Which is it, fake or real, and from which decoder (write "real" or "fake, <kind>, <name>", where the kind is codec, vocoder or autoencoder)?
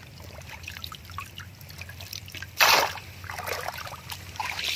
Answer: fake, vocoder, BigVGAN v2